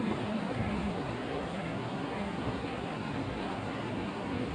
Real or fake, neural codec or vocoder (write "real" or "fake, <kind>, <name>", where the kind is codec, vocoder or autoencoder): fake, codec, SNAC